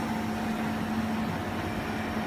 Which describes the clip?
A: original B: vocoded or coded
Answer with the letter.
A